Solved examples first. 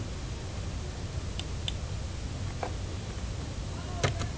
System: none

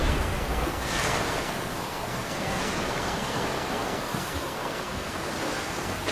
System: codec, SNAC